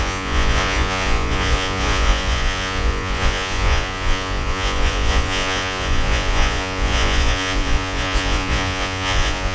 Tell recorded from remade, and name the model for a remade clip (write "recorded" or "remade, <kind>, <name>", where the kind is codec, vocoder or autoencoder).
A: remade, vocoder, Vocos